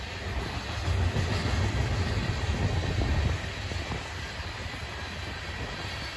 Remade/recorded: recorded